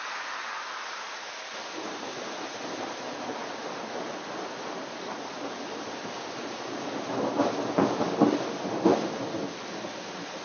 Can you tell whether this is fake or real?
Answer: real